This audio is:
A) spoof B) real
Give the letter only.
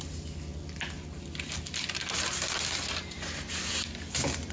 B